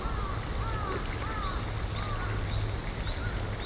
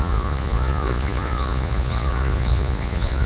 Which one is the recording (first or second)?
first